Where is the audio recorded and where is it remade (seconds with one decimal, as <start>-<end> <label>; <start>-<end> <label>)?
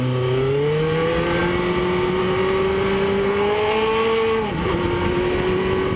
0.0-6.0 recorded